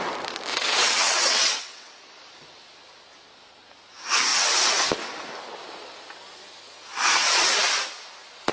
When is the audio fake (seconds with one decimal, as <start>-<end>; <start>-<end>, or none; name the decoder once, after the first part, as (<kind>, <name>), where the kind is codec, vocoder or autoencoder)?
0.5-1.9 (vocoder, WaveNeXt)